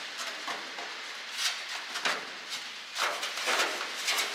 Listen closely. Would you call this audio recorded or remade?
recorded